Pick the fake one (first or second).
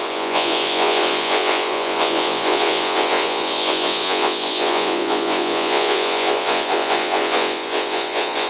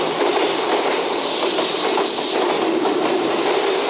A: first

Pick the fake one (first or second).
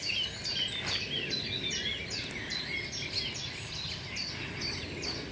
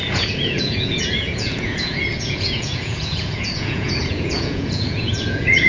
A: second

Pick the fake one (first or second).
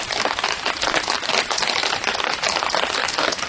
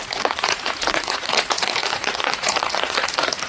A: second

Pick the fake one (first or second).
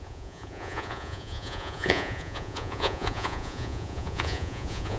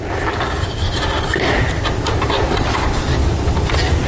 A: first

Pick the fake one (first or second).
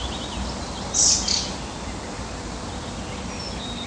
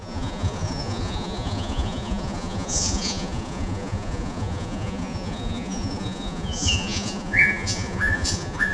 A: second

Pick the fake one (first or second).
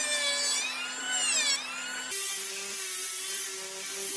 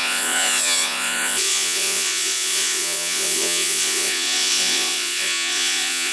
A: second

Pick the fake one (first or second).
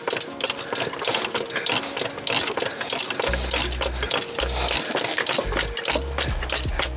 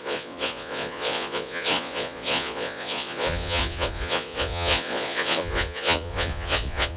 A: second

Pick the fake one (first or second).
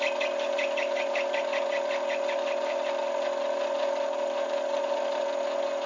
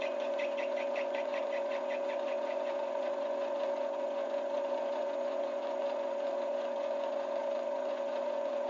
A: second